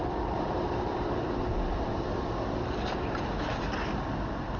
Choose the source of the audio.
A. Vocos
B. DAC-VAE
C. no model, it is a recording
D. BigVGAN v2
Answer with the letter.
C